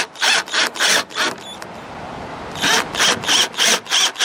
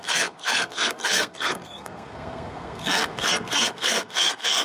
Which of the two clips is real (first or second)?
first